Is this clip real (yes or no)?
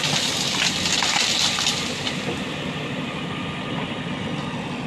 yes